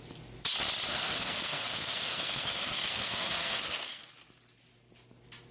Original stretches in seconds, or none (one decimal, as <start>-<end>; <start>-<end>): 0.0-0.9; 4.1-5.5